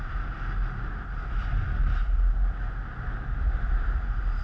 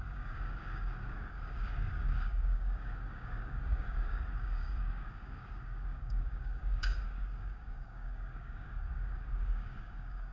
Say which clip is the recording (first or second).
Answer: first